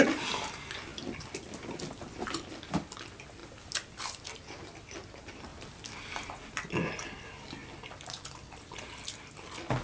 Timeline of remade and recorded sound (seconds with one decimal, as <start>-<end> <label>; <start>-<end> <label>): 0.0-9.8 recorded